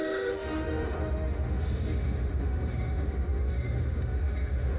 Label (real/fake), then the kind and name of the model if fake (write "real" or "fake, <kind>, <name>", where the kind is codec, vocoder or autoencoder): fake, autoencoder, DAC-VAE